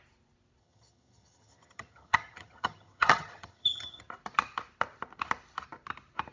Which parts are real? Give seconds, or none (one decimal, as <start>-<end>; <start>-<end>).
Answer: 0.0-0.6; 4.0-6.3